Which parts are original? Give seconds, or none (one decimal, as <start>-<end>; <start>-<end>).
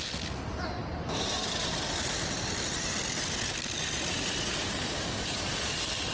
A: 0.0-6.1